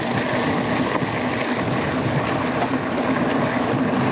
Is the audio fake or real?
real